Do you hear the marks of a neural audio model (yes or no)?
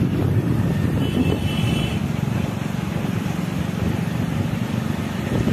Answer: yes